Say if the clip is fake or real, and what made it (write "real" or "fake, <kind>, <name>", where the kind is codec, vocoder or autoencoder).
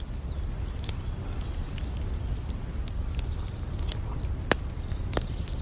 real